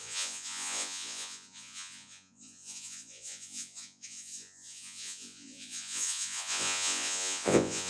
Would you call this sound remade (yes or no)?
yes